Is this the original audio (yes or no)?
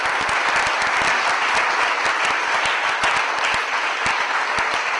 yes